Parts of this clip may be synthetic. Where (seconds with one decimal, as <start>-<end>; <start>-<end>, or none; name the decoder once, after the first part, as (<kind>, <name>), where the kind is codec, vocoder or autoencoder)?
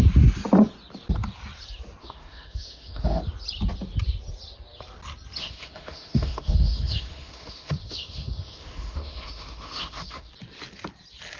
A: 2.0-3.2 (autoencoder, DAC-VAE); 5.4-10.3